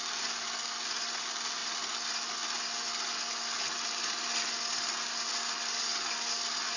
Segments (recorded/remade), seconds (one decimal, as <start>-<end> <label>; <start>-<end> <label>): 0.0-6.8 recorded